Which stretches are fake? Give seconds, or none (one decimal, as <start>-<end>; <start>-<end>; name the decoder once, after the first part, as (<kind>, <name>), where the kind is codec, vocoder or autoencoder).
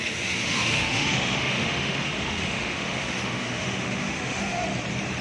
0.0-4.6 (autoencoder, DAC-VAE)